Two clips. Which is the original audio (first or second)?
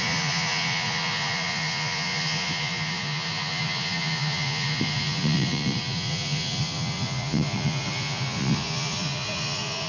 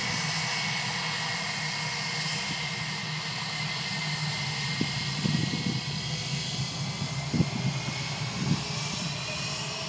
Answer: second